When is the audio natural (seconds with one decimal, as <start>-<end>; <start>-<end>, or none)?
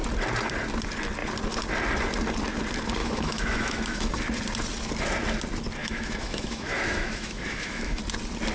0.0-3.0; 4.1-5.8; 8.0-8.5